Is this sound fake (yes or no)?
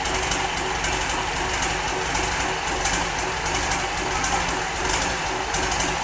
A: no